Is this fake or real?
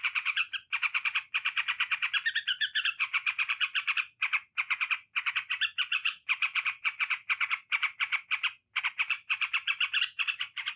fake